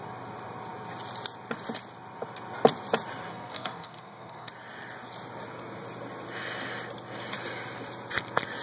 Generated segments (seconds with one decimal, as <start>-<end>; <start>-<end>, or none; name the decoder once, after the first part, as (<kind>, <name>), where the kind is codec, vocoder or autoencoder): 3.3-4.5 (codec, SNAC)